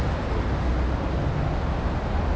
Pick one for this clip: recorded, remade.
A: recorded